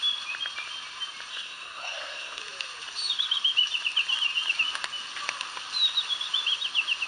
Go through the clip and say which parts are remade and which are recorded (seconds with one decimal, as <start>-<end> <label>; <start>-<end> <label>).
0.0-1.3 recorded; 1.3-2.4 remade; 2.4-7.1 recorded